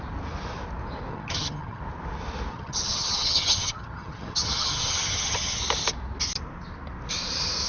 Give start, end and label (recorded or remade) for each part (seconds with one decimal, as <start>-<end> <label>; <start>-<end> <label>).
0.0-1.1 recorded; 1.1-1.8 remade; 1.8-2.5 recorded; 2.5-5.6 remade; 5.6-7.7 recorded